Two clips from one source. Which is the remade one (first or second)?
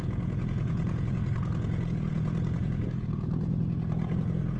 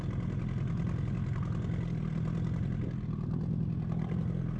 first